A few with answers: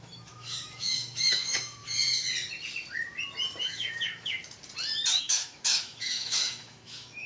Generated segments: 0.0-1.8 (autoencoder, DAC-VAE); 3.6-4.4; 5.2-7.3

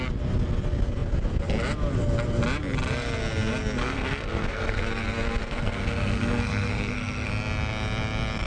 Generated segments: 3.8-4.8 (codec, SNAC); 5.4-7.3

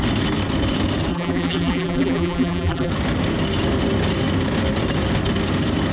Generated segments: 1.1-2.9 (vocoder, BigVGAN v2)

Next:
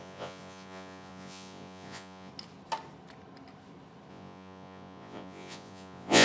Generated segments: 0.0-2.3 (vocoder, Vocos); 4.1-6.2

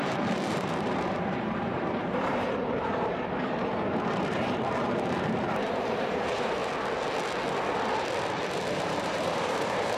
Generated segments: 0.0-6.6 (vocoder, BigVGAN v2); 8.7-10.0

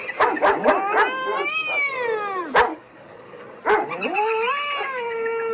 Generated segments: 2.7-3.4 (codec, DAC)

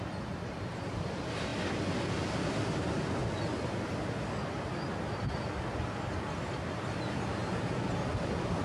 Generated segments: 0.0-1.5 (vocoder, BigVGAN v2); 2.5-3.2; 6.0-7.4; 8.1-8.6